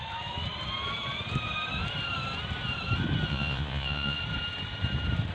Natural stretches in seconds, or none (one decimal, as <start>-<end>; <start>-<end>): 0.0-3.3; 4.2-5.3

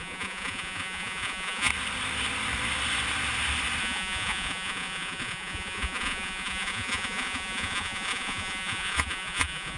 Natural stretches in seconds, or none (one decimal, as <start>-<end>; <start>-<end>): 1.7-3.8

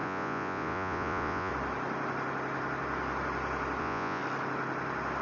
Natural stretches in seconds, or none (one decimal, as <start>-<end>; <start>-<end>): 1.5-3.8; 4.2-5.2

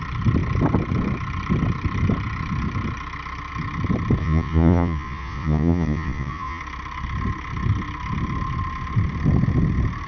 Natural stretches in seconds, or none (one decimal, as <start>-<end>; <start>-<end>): 0.0-4.2; 6.6-10.1

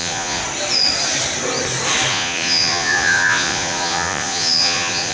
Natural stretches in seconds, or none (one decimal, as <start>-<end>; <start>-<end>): 0.4-2.1

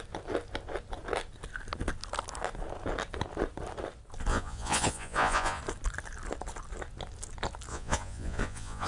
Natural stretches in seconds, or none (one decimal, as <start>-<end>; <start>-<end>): 0.0-4.3; 5.6-7.7

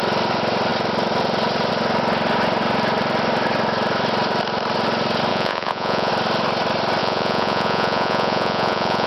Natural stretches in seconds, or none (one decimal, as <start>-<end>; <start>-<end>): 0.0-5.3; 6.1-7.0

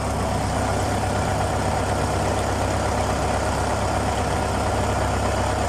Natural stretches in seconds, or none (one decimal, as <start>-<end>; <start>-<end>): 0.0-5.7